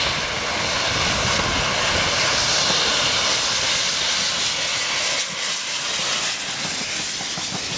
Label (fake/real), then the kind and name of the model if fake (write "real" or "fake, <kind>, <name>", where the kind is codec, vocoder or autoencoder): real